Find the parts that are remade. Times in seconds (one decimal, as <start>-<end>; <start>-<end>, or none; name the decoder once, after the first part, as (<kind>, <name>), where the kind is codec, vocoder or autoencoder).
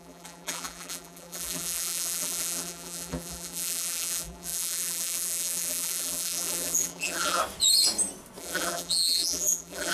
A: 0.0-7.4 (vocoder, BigVGAN v2); 8.4-9.9